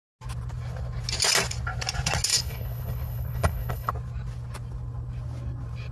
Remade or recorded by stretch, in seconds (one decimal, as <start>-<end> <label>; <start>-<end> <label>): 0.0-2.3 recorded; 2.3-3.9 remade; 3.9-5.9 recorded